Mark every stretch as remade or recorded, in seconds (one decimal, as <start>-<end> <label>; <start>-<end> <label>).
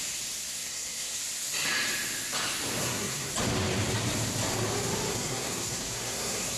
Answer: 0.0-0.5 recorded; 0.5-1.2 remade; 1.2-2.8 recorded; 2.8-3.3 remade; 3.3-5.1 recorded; 5.1-6.6 remade